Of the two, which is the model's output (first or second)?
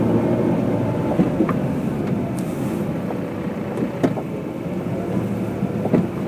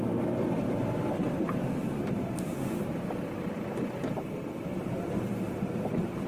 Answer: second